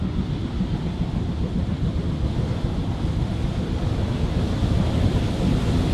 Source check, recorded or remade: recorded